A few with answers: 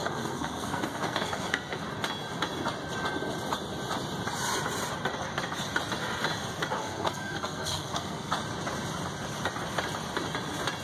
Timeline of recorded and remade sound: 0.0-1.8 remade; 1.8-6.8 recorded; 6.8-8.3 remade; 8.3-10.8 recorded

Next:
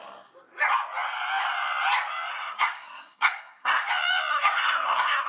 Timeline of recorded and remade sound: 0.0-2.3 recorded; 2.3-3.9 remade; 3.9-4.3 recorded; 4.3-5.3 remade